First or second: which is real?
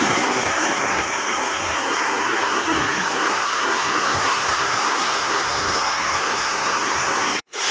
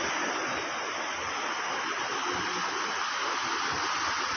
second